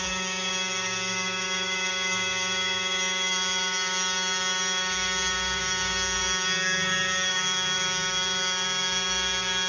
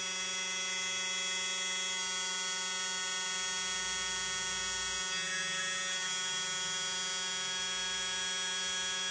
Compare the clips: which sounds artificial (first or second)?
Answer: first